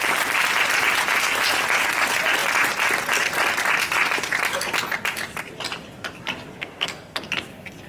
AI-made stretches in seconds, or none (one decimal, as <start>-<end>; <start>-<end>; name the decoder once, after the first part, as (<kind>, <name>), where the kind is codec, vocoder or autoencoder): 6.5-7.2 (codec, SNAC)